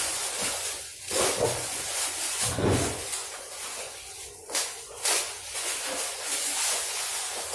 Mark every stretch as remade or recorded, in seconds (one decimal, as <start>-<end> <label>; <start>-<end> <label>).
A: 0.0-7.5 remade